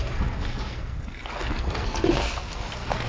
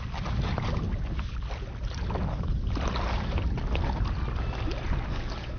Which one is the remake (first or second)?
first